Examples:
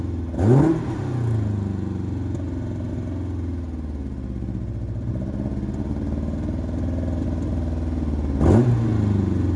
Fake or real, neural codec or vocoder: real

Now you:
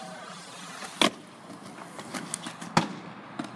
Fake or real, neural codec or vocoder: real